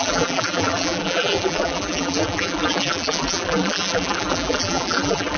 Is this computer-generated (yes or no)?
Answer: yes